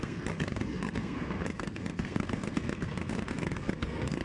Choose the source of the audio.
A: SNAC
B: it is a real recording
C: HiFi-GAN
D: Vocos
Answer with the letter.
A